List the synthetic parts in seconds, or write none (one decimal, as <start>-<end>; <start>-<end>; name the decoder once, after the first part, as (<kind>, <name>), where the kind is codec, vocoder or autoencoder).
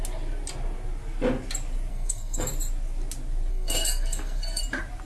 1.9-2.5 (codec, SNAC); 3.5-4.6